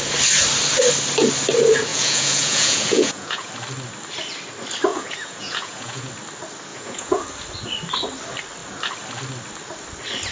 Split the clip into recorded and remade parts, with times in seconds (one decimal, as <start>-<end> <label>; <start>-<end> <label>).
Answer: 0.0-1.9 recorded; 1.9-3.5 remade; 3.5-4.9 recorded; 4.9-6.1 remade; 6.1-6.7 recorded; 6.7-7.2 remade; 7.2-10.3 recorded